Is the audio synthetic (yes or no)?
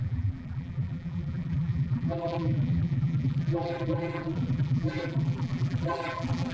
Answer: yes